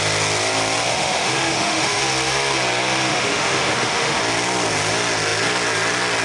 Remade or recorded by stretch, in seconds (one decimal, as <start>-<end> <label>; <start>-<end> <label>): 0.0-0.9 recorded; 0.9-2.0 remade; 2.0-3.1 recorded; 3.1-4.2 remade; 4.2-6.2 recorded

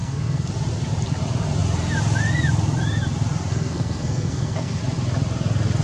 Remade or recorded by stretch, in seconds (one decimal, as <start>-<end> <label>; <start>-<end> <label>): 0.0-0.5 remade; 0.5-3.5 recorded; 3.5-4.8 remade; 4.8-5.8 recorded

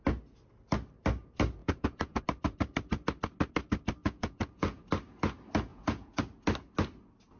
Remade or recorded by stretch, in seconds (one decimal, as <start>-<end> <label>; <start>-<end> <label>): 0.0-1.6 recorded; 1.6-2.2 remade; 2.2-4.0 recorded; 4.0-4.8 remade; 4.8-5.7 recorded; 5.7-6.2 remade; 6.2-7.4 recorded